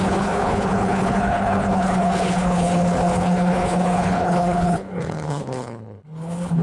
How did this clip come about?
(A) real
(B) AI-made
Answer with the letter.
B